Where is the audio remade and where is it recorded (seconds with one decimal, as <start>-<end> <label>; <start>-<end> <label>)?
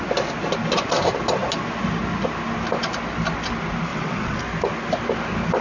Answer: 0.0-3.9 recorded; 3.9-4.4 remade; 4.4-5.6 recorded